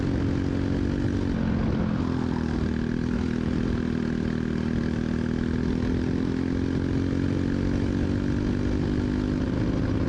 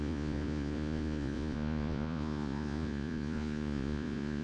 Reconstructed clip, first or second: second